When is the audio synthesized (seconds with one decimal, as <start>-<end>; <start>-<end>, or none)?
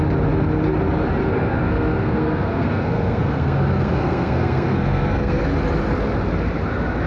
1.2-5.4